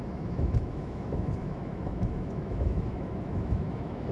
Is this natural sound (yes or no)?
no